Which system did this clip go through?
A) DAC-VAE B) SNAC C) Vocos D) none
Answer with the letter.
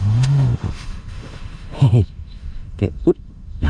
A